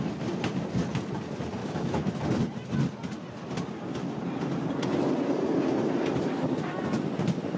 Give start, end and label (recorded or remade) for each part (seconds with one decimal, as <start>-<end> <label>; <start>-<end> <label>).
0.0-1.6 recorded; 1.6-2.1 remade; 2.1-7.6 recorded